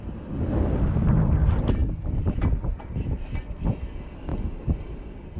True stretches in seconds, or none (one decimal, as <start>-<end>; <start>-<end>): 0.0-5.4

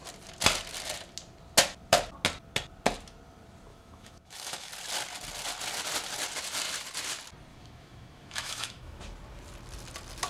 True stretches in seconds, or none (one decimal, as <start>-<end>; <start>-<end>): 0.0-3.7; 4.7-7.5; 9.0-10.3